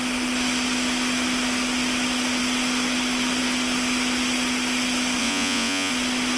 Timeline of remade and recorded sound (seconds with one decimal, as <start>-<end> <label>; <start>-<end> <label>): 0.0-5.2 recorded; 5.2-5.9 remade; 5.9-6.4 recorded